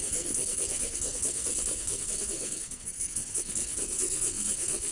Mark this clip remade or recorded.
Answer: remade